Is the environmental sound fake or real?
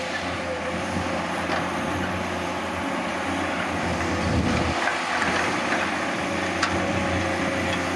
real